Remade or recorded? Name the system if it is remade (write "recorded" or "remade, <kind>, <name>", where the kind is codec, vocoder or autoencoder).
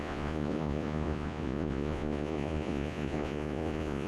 remade, vocoder, Vocos